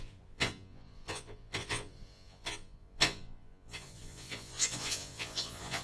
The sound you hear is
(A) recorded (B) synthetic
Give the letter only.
B